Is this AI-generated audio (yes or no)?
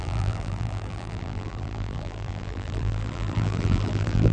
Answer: yes